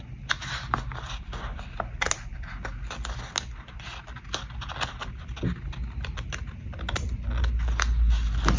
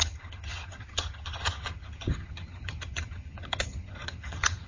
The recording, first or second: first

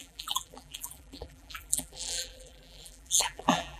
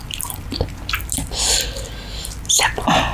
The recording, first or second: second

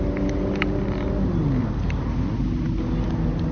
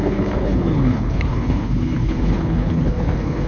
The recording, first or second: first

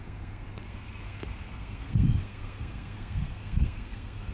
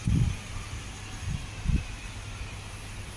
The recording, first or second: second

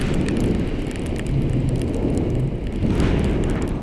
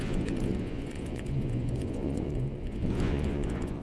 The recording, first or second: first